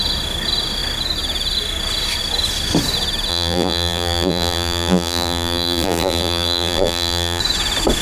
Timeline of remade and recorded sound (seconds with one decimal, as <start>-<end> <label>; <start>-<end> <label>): 0.0-3.3 recorded; 3.3-7.4 remade; 7.4-8.0 recorded